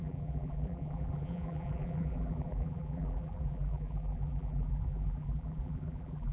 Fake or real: fake